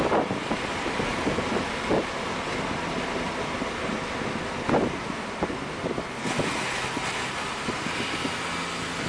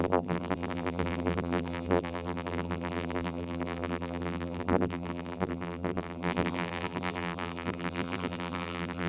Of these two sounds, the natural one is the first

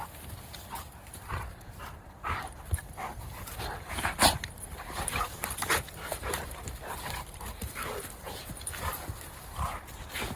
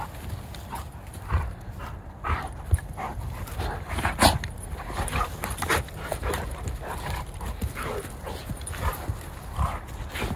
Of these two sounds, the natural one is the second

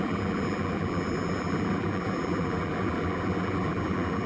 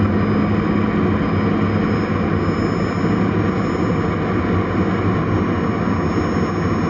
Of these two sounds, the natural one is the second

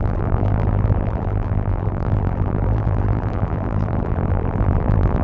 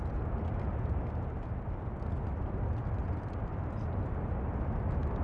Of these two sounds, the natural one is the second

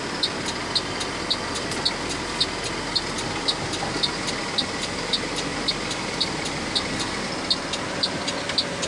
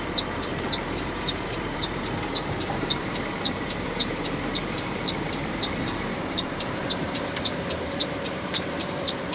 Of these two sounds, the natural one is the first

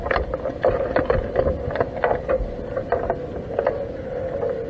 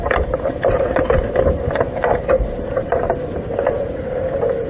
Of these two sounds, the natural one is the first